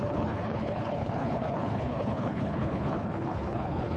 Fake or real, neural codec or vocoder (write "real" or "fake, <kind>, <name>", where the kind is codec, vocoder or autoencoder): fake, codec, HILCodec